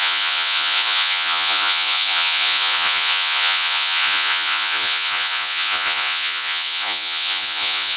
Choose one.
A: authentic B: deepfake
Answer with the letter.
B